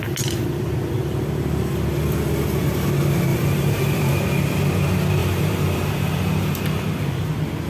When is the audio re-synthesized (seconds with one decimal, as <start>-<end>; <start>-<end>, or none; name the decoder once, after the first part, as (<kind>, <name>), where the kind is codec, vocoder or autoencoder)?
3.3-4.2 (vocoder, BigVGAN v2); 5.2-6.6